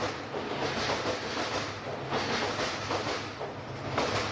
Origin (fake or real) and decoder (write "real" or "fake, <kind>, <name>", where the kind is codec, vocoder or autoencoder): real